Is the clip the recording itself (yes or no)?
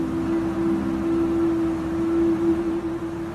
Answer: yes